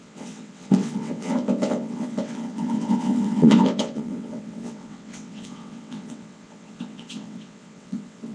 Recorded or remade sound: remade